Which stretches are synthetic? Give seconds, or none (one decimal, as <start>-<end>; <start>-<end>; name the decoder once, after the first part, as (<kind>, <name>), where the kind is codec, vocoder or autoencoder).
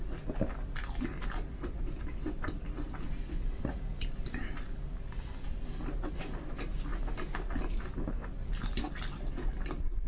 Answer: none